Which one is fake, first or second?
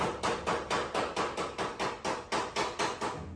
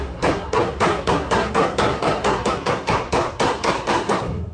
second